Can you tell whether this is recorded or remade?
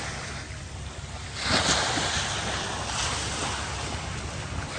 recorded